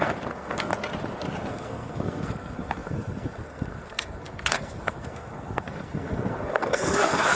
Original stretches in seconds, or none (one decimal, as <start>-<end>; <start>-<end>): 0.7-1.5